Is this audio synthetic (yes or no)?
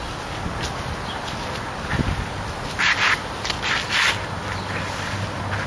no